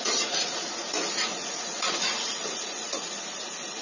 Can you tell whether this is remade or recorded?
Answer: remade